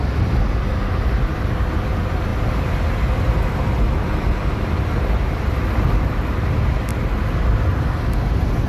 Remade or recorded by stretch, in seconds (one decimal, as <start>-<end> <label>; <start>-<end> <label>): 0.0-8.7 recorded